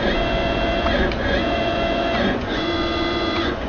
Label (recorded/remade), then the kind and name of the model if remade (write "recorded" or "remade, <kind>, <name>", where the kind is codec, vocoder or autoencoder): remade, vocoder, Vocos